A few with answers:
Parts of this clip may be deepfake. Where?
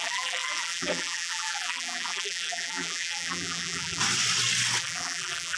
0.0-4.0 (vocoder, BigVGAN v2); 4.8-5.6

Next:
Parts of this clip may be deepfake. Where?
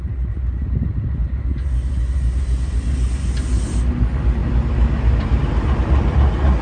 none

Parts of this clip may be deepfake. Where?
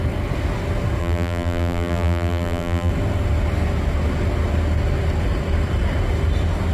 1.0-2.9 (vocoder, BigVGAN v2)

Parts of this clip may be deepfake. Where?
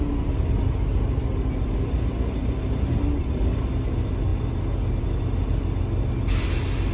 none